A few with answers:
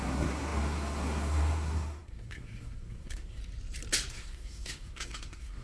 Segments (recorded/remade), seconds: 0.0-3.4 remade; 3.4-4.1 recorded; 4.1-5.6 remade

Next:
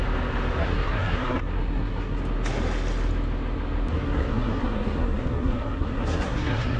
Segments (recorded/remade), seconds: 0.0-0.6 recorded; 0.6-2.2 remade; 2.2-3.9 recorded; 3.9-6.8 remade